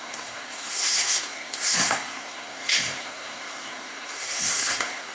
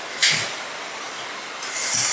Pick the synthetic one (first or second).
first